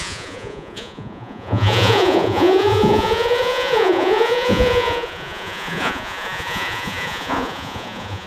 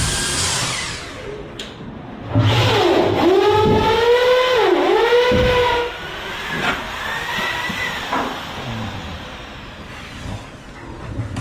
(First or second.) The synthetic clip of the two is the first